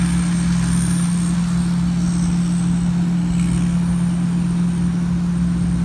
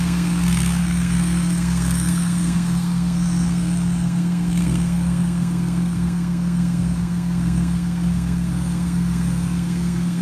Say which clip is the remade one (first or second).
second